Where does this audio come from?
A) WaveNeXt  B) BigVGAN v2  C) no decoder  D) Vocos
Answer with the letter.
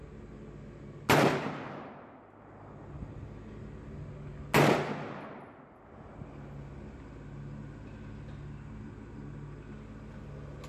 C